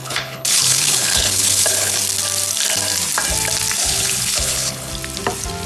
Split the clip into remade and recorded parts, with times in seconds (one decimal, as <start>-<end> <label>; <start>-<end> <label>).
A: 0.0-2.0 remade; 2.0-3.8 recorded; 3.8-4.9 remade; 4.9-5.7 recorded